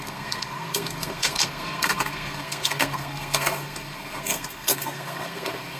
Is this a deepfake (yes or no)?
yes